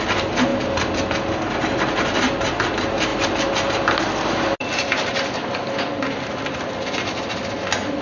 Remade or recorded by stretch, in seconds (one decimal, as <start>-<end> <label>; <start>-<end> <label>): 0.0-8.0 recorded